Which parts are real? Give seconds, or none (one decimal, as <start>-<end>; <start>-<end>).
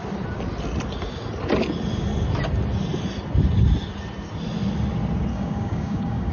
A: 0.0-5.3